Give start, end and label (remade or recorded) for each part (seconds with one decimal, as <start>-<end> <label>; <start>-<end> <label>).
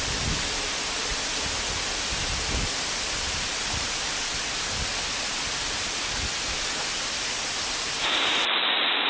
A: 0.0-9.1 recorded